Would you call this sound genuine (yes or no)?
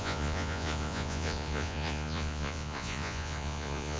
no